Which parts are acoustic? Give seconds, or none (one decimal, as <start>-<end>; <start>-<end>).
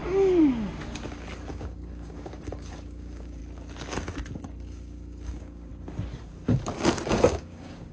0.0-1.5; 3.4-4.4; 5.7-6.8